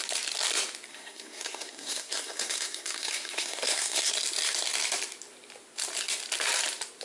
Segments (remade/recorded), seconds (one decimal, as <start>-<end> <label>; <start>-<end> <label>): 0.0-0.9 recorded; 0.9-4.1 remade; 4.1-7.0 recorded